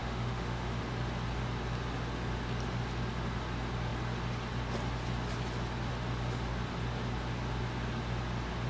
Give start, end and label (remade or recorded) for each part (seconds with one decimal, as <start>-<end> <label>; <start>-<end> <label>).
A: 0.0-0.8 remade; 0.8-8.7 recorded